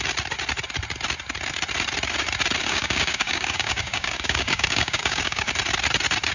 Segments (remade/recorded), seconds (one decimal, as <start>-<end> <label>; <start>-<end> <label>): 0.0-2.6 recorded; 2.6-5.5 remade; 5.5-6.3 recorded